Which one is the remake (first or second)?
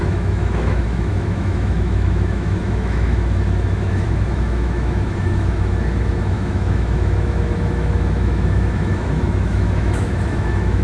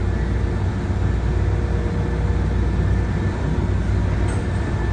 first